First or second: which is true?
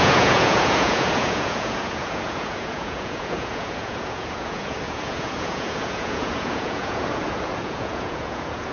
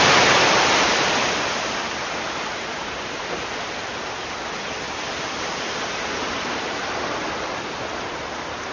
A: second